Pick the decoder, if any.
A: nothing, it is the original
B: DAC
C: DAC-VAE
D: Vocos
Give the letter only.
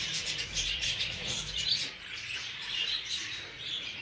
D